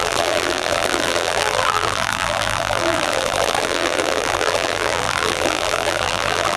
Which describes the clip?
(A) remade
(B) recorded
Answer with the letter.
A